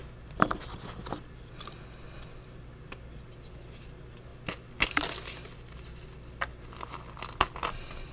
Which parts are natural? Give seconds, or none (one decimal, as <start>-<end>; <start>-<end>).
0.0-8.1